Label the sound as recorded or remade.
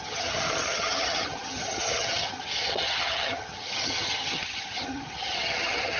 remade